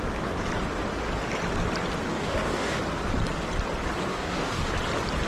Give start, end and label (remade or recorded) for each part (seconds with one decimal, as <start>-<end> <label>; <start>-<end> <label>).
0.0-2.1 recorded; 2.1-2.8 remade; 2.8-4.1 recorded; 4.1-4.7 remade; 4.7-5.3 recorded